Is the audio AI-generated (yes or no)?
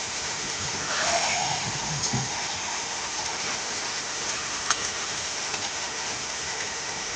yes